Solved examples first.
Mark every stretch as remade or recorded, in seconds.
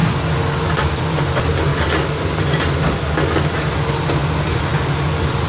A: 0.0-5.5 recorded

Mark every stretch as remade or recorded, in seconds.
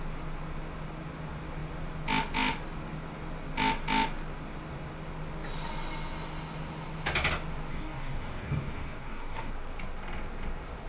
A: 0.0-7.7 recorded; 7.7-9.5 remade; 9.5-10.9 recorded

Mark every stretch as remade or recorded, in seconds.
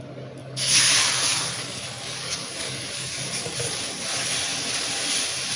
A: 0.0-0.4 recorded; 0.4-3.8 remade; 3.8-5.6 recorded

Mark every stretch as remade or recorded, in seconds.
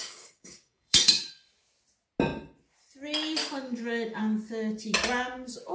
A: 0.0-1.3 remade; 1.3-3.4 recorded; 3.4-4.2 remade; 4.2-5.7 recorded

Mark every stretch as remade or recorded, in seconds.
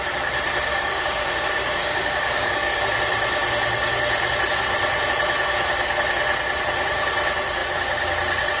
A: 0.0-0.7 recorded; 0.7-2.8 remade; 2.8-8.6 recorded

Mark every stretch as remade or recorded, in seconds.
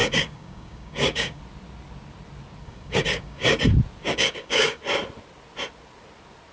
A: 0.0-1.4 remade; 1.4-2.6 recorded; 2.6-3.6 remade; 3.6-4.0 recorded; 4.0-4.8 remade; 4.8-6.5 recorded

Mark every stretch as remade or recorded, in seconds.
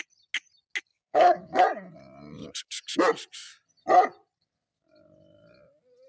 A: 0.0-0.9 recorded; 0.9-1.6 remade; 1.6-2.4 recorded; 2.4-3.0 remade; 3.0-6.1 recorded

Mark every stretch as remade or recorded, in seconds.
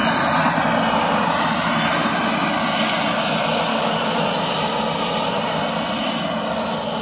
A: 0.0-3.7 recorded; 3.7-4.2 remade; 4.2-7.0 recorded